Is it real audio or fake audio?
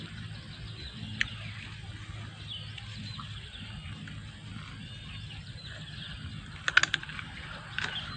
real